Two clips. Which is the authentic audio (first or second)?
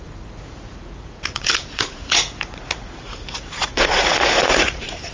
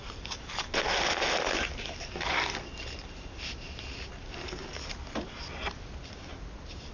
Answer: second